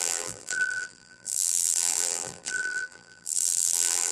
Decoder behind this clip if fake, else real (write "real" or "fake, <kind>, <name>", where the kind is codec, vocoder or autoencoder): fake, vocoder, BigVGAN v2